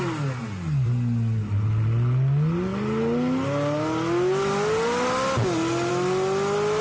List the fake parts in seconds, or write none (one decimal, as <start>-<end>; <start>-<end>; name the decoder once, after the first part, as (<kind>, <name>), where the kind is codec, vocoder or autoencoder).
none